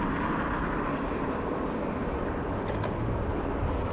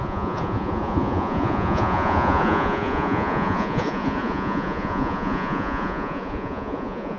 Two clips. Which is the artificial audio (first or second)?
second